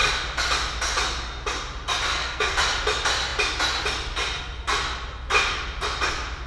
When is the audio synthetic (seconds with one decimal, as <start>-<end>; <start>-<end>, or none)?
2.1-2.6